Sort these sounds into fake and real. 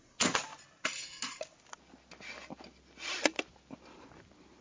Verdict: real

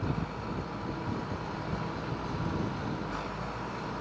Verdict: real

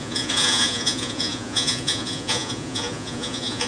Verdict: fake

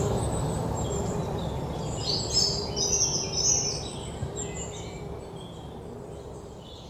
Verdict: real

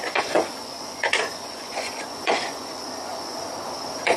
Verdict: fake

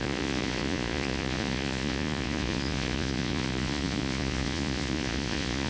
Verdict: fake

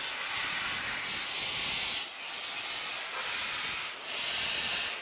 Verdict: real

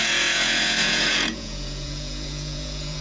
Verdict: fake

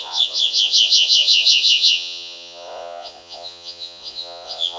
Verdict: fake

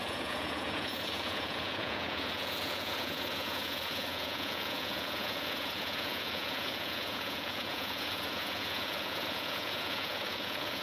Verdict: fake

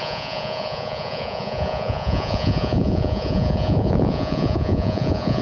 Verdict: fake